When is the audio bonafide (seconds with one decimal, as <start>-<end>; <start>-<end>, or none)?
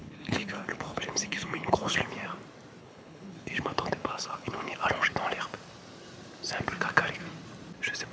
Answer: 2.0-2.8; 5.1-8.1